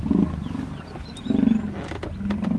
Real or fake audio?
real